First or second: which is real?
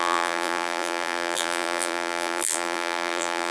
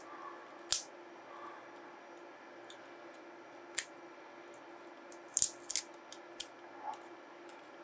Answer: second